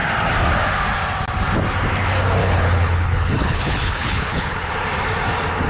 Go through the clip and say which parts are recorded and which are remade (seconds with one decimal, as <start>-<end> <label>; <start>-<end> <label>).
0.0-2.4 recorded; 2.4-4.7 remade; 4.7-5.7 recorded